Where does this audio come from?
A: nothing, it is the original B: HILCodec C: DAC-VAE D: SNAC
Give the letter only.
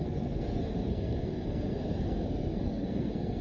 D